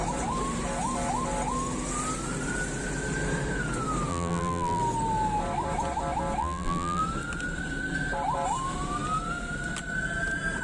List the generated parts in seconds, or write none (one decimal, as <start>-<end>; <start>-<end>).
4.1-4.8; 6.4-7.0